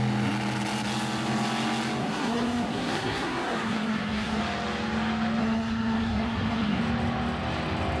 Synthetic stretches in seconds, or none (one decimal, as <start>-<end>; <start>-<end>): 2.0-4.4; 5.4-6.8